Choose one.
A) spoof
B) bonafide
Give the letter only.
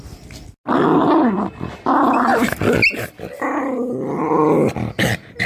B